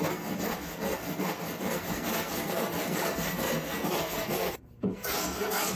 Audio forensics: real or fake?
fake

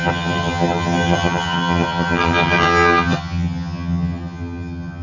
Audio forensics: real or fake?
fake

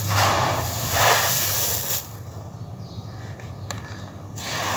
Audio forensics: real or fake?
real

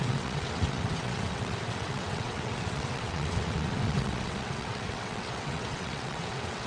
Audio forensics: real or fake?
fake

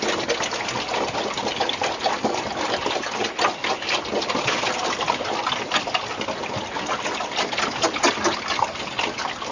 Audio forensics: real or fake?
real